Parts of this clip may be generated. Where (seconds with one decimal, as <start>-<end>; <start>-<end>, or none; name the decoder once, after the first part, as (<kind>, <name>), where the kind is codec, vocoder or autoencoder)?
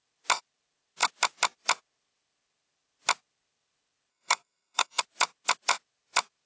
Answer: 4.1-5.0 (codec, SNAC)